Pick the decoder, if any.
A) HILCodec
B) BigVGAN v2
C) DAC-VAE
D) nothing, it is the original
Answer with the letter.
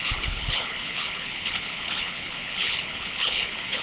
A